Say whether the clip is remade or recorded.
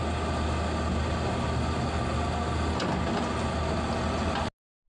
recorded